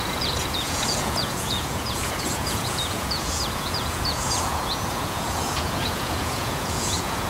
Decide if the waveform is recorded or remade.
remade